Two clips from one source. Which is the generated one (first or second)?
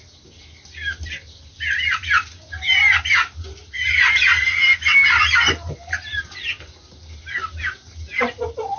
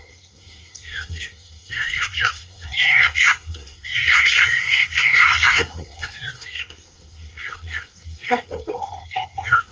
second